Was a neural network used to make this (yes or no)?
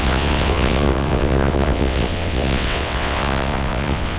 yes